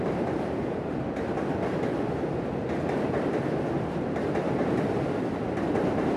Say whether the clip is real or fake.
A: fake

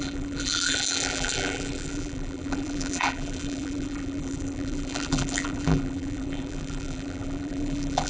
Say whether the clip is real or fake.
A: fake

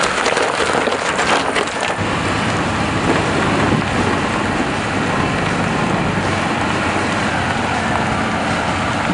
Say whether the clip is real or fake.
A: real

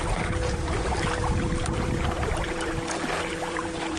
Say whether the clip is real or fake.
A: fake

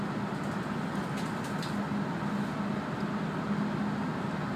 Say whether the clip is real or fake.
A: real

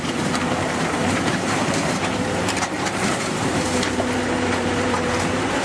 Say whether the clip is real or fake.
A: fake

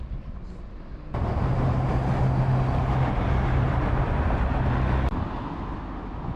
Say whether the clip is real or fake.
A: real